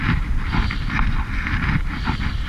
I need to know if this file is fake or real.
real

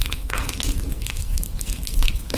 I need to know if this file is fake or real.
fake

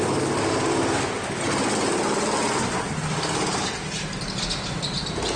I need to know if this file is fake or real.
real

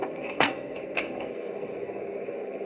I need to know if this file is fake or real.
fake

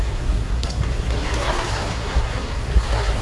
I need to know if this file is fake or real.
fake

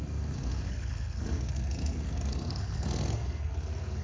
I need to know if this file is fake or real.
fake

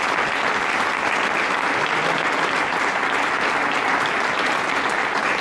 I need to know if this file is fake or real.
real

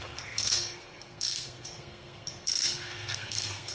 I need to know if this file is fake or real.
fake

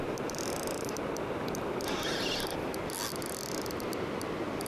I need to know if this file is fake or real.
real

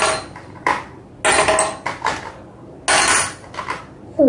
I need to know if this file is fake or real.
real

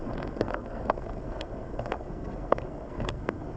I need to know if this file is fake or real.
fake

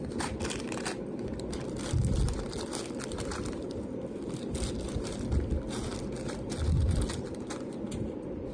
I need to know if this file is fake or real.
real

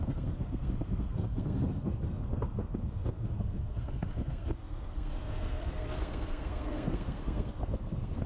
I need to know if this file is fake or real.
fake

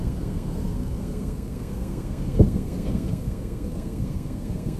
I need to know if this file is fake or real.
fake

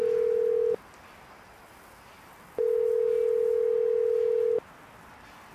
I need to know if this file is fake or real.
real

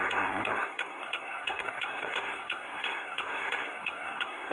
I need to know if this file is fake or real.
fake